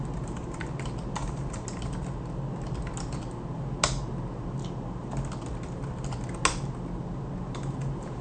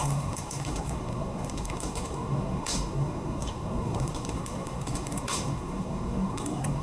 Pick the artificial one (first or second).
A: second